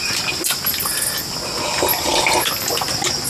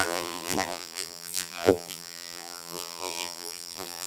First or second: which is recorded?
first